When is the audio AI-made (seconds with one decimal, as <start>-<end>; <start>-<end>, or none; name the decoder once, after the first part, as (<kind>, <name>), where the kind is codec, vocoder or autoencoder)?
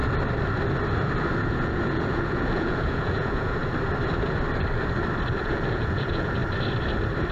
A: 1.4-3.6 (vocoder, Vocos); 5.4-6.4